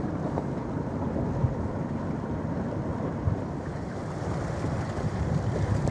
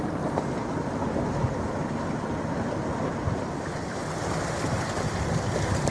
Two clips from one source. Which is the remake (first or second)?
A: first